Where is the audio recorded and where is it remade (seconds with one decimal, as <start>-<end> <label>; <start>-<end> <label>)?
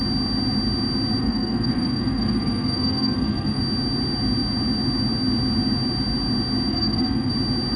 0.0-1.2 recorded; 1.2-3.6 remade; 3.6-6.7 recorded; 6.7-7.3 remade; 7.3-7.8 recorded